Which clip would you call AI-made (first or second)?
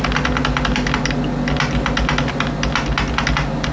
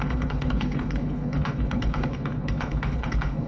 second